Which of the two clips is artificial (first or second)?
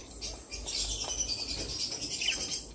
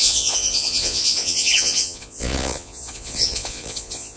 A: second